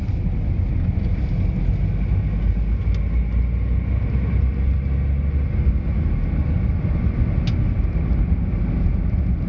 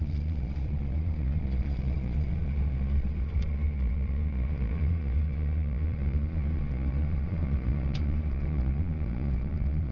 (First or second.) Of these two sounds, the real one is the first